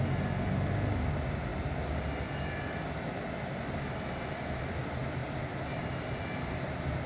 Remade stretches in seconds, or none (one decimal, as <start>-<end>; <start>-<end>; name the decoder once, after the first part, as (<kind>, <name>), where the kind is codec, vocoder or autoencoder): none